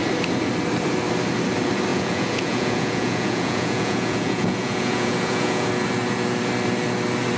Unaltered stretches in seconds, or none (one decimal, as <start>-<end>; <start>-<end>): 0.0-1.9; 5.7-7.4